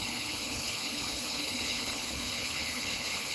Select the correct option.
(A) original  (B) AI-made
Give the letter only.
B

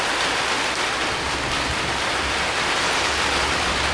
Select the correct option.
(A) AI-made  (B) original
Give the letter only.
B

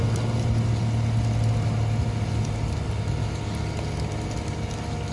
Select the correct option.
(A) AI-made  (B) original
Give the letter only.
B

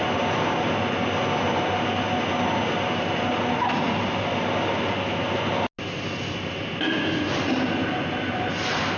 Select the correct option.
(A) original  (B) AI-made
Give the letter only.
A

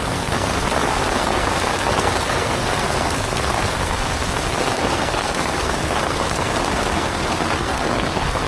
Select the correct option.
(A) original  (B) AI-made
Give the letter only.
B